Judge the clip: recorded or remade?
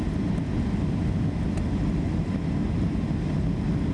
recorded